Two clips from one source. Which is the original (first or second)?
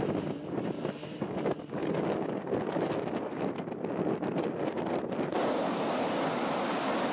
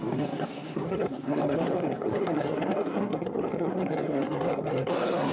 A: first